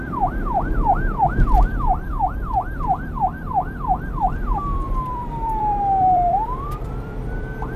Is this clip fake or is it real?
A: fake